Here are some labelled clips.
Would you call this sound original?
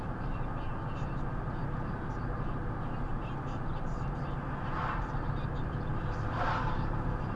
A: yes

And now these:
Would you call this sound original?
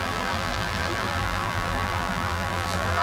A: no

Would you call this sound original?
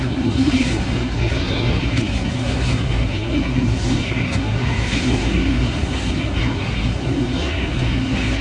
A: no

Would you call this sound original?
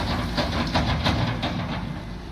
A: no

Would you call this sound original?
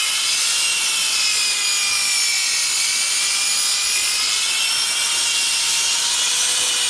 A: yes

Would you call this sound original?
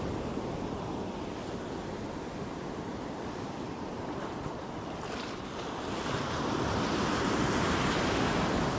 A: yes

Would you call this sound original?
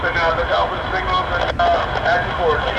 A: yes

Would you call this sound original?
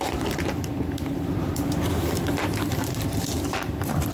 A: no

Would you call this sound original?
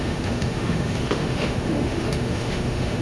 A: no